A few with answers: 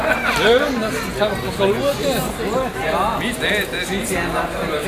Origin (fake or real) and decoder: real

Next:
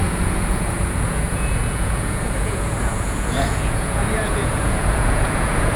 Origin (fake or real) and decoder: fake, vocoder, Vocos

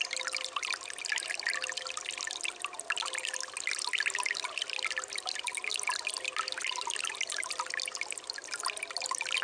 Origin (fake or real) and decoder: real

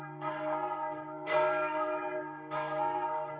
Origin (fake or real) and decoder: fake, codec, SNAC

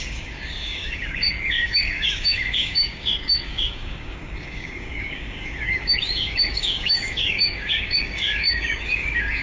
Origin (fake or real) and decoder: fake, codec, DAC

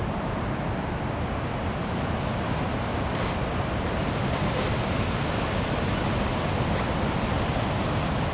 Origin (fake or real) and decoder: real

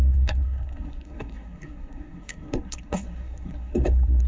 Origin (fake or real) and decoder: fake, codec, SNAC